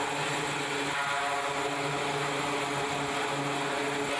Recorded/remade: recorded